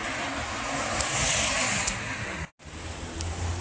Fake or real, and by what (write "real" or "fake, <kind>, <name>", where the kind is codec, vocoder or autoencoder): real